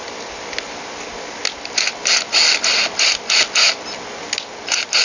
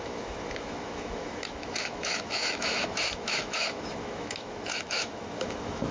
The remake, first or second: second